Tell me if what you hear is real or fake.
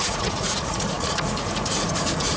fake